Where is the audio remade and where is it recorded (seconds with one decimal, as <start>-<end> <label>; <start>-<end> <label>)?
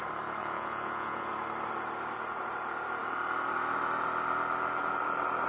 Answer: 0.0-0.4 recorded; 0.4-1.3 remade; 1.3-5.5 recorded